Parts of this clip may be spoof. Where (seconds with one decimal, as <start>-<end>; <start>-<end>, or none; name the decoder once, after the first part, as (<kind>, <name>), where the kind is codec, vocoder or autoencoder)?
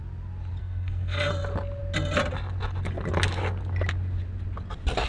0.6-1.3 (codec, SNAC)